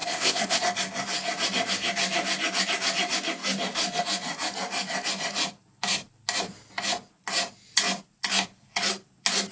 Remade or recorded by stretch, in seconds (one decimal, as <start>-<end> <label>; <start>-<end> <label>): 0.0-0.6 remade; 0.6-9.5 recorded